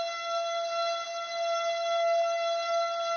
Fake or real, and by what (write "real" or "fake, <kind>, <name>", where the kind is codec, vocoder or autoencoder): real